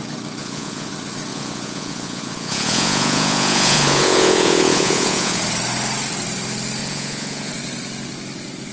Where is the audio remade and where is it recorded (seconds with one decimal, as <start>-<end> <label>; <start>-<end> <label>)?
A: 0.0-0.4 recorded; 0.4-0.9 remade; 0.9-1.3 recorded; 1.3-5.4 remade; 5.4-6.8 recorded; 6.8-7.5 remade; 7.5-8.7 recorded